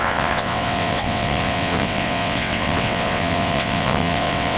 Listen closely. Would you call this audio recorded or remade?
remade